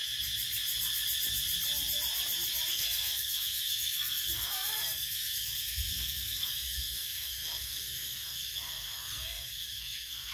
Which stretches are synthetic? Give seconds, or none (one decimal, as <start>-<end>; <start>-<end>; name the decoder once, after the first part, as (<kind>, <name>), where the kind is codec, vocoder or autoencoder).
2.7-10.3 (codec, SNAC)